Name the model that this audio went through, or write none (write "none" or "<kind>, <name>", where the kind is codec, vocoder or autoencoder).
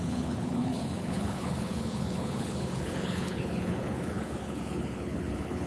codec, HILCodec